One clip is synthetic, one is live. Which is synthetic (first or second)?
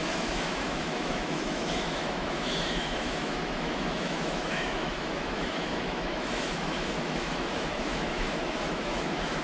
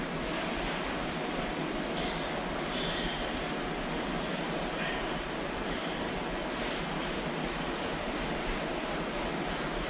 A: first